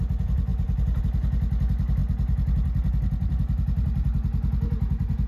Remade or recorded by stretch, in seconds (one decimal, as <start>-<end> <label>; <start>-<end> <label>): 0.0-0.5 recorded; 0.5-1.0 remade; 1.0-5.3 recorded